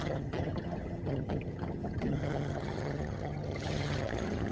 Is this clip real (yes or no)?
no